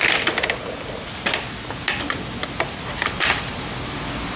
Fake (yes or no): no